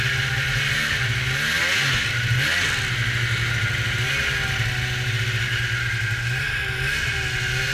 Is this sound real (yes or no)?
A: yes